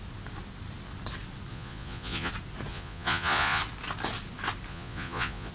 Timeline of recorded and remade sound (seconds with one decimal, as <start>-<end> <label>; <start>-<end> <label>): 0.0-1.5 recorded; 1.5-2.3 remade; 2.3-2.7 recorded; 2.7-3.6 remade; 3.6-4.7 recorded; 4.7-5.5 remade